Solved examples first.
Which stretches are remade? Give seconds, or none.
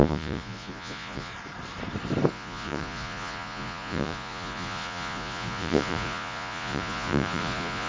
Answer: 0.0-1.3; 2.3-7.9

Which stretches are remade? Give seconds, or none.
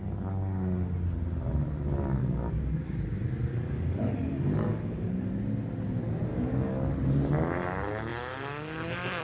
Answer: 2.2-2.9; 3.5-5.3; 6.3-6.9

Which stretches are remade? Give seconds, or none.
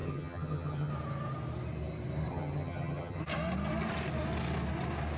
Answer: 0.0-0.9; 2.3-3.2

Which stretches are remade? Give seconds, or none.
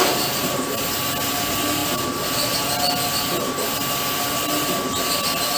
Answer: none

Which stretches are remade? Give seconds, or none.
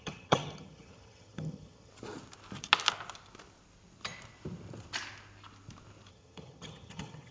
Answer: 0.0-1.9; 6.1-7.3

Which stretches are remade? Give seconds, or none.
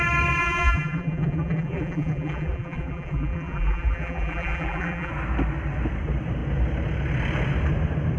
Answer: 0.4-5.1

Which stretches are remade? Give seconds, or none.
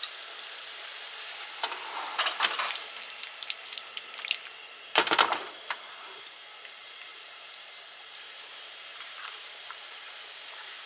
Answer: 7.1-10.9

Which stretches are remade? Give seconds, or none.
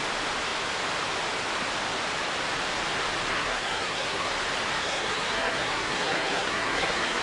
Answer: 3.3-4.3; 4.8-7.2